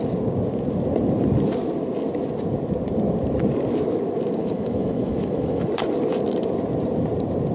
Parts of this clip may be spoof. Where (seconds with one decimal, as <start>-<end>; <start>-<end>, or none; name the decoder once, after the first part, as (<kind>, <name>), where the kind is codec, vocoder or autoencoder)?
4.4-5.7 (autoencoder, DAC-VAE)